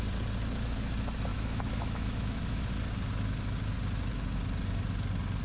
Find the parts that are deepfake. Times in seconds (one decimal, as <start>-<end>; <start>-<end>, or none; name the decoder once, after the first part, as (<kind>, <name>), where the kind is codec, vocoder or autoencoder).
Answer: 1.3-2.7 (autoencoder, DAC-VAE)